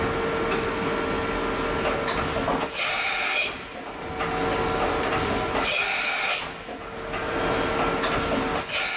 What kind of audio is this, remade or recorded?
recorded